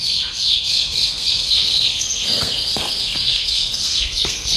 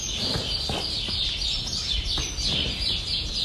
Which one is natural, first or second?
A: second